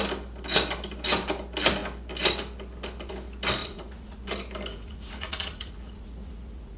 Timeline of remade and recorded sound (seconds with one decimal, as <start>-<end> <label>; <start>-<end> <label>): 0.0-3.6 recorded; 3.6-4.2 remade; 4.2-4.7 recorded; 4.7-6.8 remade